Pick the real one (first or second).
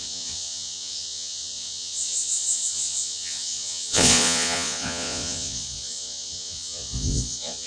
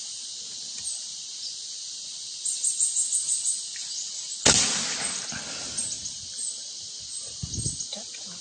second